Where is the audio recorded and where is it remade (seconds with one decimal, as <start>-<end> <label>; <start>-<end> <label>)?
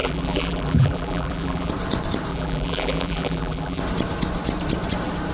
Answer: 0.0-1.7 remade; 1.7-2.3 recorded; 2.3-3.8 remade; 3.8-5.3 recorded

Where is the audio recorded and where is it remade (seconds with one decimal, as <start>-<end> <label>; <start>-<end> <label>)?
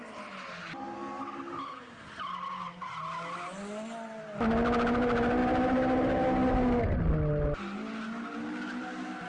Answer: 0.0-9.3 recorded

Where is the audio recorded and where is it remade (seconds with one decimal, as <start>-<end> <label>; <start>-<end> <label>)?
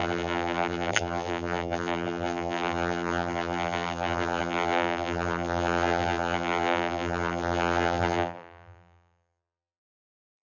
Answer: 0.0-10.4 remade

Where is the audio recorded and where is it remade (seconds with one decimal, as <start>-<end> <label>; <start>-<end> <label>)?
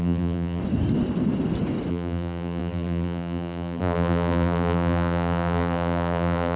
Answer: 0.0-0.6 remade; 0.6-1.9 recorded; 1.9-6.6 remade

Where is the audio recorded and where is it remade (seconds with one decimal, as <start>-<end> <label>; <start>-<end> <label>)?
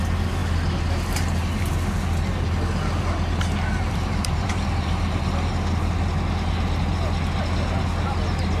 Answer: 0.0-3.7 recorded; 3.7-5.5 remade; 5.5-8.6 recorded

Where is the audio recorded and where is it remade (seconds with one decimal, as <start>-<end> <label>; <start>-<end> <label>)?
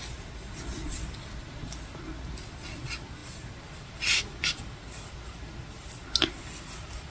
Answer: 0.0-7.1 recorded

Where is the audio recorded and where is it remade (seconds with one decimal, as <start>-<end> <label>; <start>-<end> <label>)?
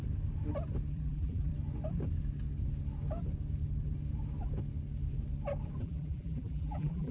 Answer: 0.0-0.9 recorded; 0.9-1.5 remade; 1.5-5.8 recorded; 5.8-7.1 remade